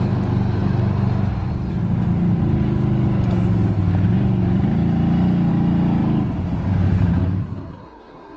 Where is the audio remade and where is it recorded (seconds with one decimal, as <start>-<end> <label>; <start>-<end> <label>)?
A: 0.0-7.4 recorded; 7.4-8.4 remade